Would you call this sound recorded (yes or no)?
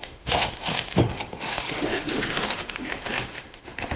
no